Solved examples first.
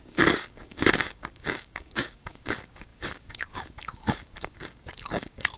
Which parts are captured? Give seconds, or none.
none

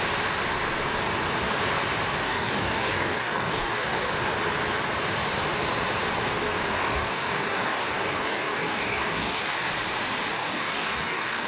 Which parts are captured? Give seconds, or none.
0.0-2.2; 4.1-6.7; 9.7-10.3